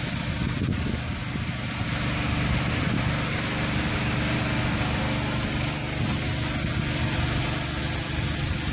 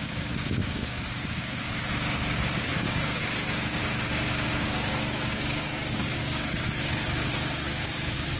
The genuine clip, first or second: first